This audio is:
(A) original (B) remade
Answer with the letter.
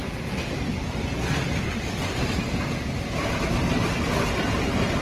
A